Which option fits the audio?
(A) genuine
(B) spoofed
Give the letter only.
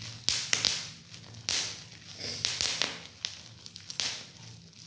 A